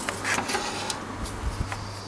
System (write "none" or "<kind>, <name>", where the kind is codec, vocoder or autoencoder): none